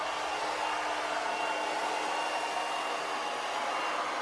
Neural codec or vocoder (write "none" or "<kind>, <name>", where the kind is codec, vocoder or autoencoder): none